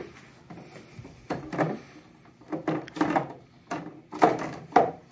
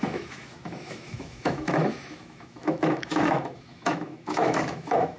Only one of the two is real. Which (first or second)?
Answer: first